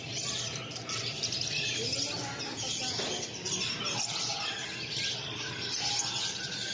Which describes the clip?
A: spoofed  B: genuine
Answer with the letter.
B